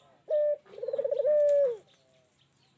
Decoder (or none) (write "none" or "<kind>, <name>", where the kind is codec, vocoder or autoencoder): none